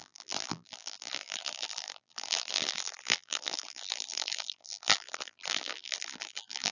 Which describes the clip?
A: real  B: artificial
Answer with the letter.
B